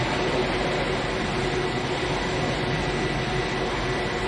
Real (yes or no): yes